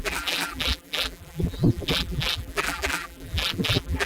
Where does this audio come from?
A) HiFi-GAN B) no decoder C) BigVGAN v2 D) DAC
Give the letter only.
C